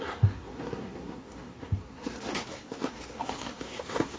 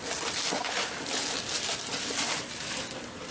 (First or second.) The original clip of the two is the second